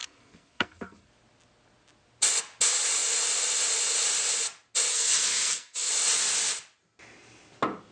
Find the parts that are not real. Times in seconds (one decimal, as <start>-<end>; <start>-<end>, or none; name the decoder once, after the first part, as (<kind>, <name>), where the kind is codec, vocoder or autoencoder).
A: 0.0-1.1 (codec, SNAC); 4.9-5.9